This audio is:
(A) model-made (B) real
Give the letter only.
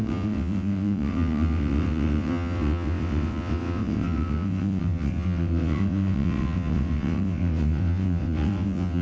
A